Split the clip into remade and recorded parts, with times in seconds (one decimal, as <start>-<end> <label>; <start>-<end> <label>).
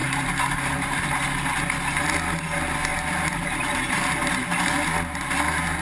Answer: 0.0-1.1 remade; 1.1-2.9 recorded; 2.9-4.0 remade; 4.0-5.8 recorded